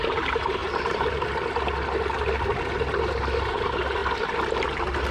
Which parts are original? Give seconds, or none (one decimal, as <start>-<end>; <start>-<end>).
0.0-0.6; 1.1-5.1